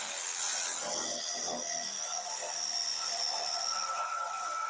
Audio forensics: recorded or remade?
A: recorded